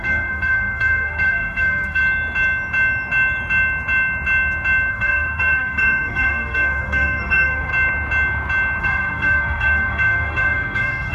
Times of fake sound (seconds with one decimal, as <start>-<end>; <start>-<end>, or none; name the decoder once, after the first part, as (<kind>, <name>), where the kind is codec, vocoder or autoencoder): 0.0-2.0 (codec, SNAC); 4.9-7.7; 8.8-11.1